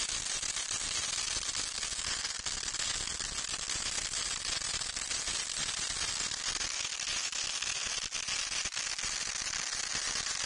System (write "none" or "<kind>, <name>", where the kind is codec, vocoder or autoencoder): none